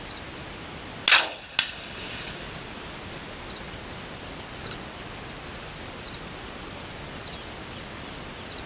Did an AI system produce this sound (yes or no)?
no